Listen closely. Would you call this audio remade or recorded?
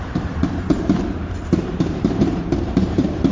remade